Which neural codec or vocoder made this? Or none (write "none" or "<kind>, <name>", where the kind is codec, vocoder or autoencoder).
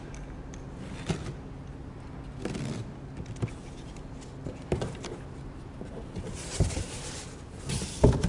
none